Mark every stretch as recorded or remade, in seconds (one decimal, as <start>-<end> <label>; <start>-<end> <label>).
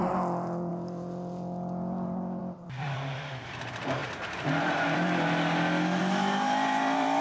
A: 0.0-0.7 remade; 0.7-2.4 recorded; 2.4-4.0 remade; 4.0-6.0 recorded; 6.0-7.2 remade